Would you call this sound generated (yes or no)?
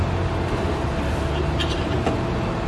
no